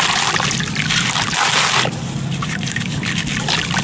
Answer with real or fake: real